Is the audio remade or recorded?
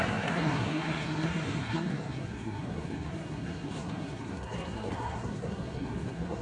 remade